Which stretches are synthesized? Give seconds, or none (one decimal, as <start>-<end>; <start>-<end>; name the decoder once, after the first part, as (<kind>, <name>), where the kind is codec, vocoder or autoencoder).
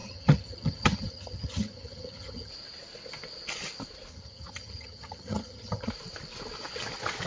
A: 0.0-2.5 (vocoder, HiFi-GAN); 4.1-5.9